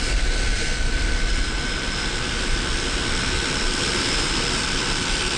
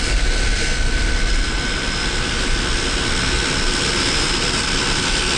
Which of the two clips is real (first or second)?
second